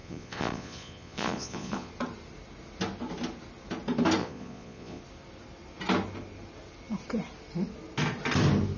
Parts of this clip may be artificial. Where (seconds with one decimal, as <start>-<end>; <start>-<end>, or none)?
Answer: 0.0-1.9; 4.2-5.0